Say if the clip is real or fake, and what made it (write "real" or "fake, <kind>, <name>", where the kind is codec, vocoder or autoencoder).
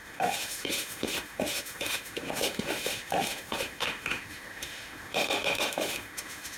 fake, autoencoder, DAC-VAE